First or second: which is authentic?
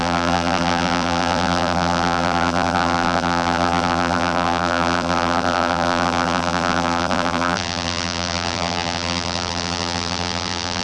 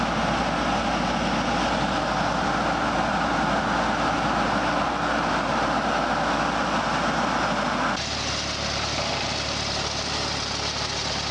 second